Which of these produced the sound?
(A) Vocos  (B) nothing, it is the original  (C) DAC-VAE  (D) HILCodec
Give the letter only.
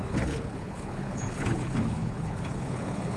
D